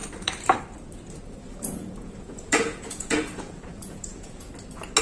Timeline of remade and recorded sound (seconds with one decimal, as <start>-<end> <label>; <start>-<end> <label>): 0.0-1.5 recorded; 1.5-4.5 remade; 4.5-5.0 recorded